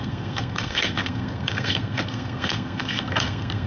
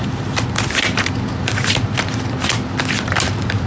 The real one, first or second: second